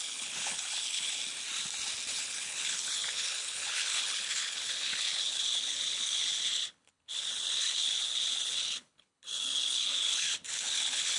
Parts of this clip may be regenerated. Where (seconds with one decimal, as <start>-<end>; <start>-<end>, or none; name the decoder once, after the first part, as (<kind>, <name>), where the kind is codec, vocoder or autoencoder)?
0.0-1.2 (codec, HILCodec); 2.1-11.2